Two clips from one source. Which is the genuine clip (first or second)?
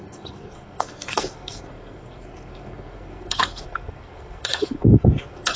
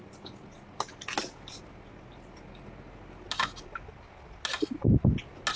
second